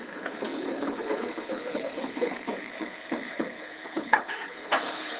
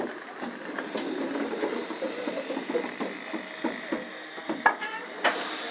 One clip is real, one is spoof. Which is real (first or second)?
second